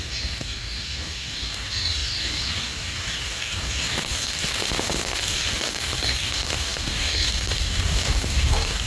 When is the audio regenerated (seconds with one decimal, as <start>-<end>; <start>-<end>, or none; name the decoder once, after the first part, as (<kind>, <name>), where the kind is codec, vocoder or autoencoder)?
0.0-8.9 (codec, DAC)